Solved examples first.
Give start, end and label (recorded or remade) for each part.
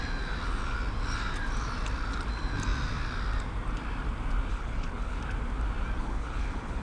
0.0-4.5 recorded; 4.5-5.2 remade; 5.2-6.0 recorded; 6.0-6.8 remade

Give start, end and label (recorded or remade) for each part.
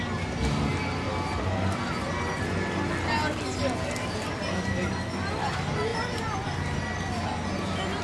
0.0-8.0 recorded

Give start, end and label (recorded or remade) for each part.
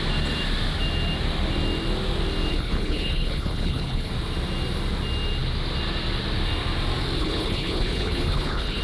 0.0-2.5 recorded; 2.5-4.1 remade; 4.1-7.2 recorded; 7.2-8.8 remade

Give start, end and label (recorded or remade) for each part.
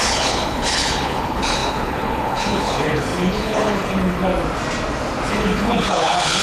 0.0-4.3 remade; 4.3-5.3 recorded; 5.3-6.4 remade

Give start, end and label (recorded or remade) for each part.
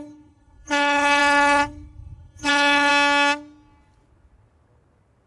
0.0-2.9 remade; 2.9-5.3 recorded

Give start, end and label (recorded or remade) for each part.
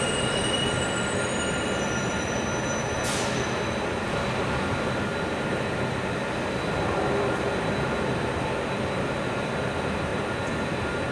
0.0-11.1 recorded